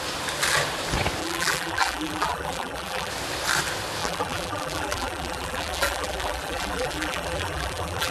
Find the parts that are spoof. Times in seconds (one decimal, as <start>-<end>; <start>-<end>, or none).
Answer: 1.2-3.1; 4.0-8.1